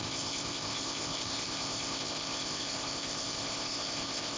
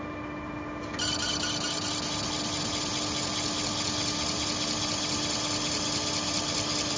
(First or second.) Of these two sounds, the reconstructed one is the first